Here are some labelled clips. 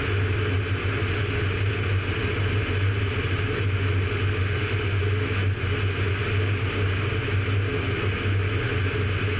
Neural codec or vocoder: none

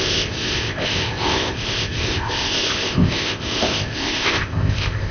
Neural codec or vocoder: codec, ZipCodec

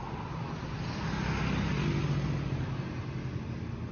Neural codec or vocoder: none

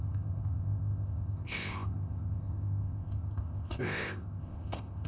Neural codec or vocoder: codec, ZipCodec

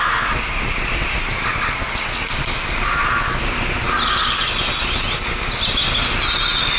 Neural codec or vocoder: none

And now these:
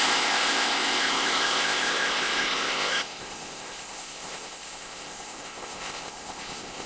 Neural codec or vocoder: codec, ZipCodec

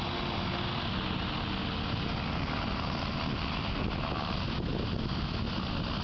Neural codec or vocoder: none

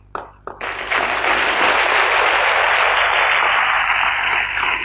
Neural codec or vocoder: none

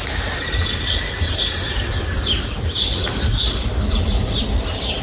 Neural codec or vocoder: none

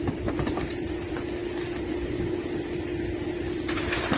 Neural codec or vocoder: none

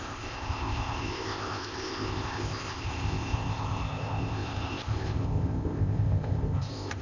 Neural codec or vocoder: codec, ZipCodec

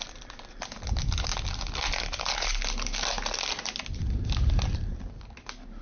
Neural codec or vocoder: none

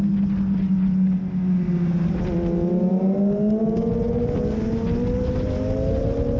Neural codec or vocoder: none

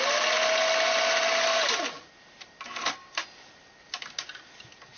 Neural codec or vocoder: none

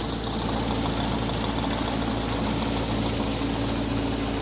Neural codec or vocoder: none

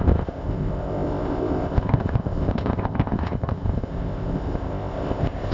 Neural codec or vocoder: codec, ZipCodec